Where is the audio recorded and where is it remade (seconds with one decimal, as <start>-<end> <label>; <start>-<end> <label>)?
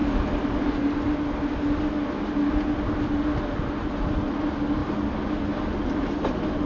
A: 0.0-6.7 recorded